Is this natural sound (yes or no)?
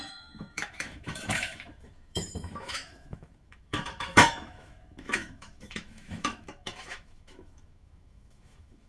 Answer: no